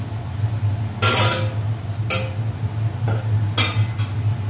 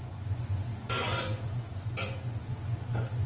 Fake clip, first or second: second